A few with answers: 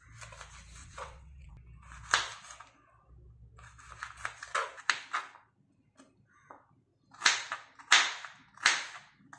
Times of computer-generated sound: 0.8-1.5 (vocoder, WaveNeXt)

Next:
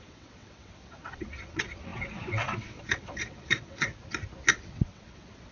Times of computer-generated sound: 0.0-3.9 (vocoder, WaveNeXt); 4.5-5.5